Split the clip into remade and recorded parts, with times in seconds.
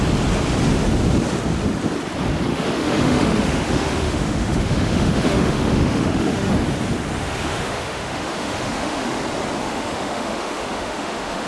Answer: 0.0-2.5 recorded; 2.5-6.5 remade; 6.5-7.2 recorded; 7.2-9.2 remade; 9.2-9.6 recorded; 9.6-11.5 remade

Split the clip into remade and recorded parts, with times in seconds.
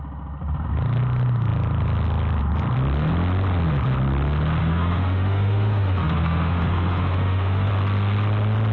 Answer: 0.0-4.6 recorded; 4.6-7.7 remade; 7.7-8.7 recorded